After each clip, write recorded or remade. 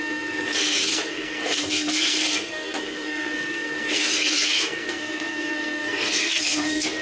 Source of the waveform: remade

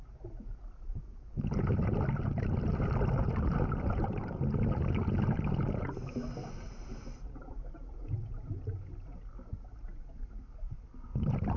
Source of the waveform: recorded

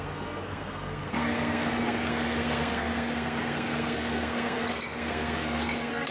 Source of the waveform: remade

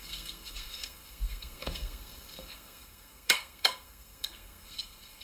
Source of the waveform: remade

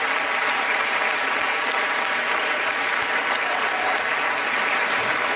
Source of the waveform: recorded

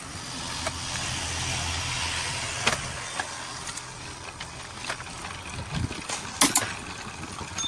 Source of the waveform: recorded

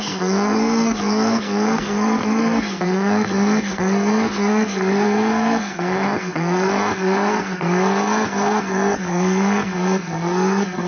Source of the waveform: remade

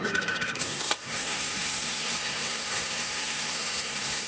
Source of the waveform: remade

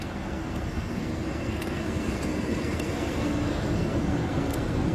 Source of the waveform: remade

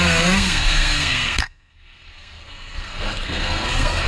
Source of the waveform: remade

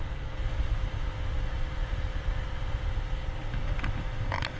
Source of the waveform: recorded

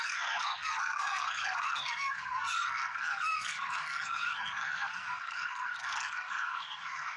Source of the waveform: remade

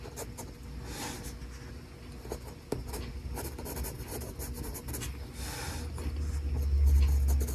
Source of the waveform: recorded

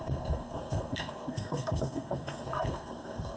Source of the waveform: remade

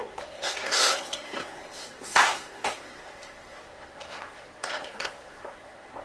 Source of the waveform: remade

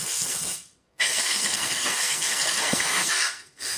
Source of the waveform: remade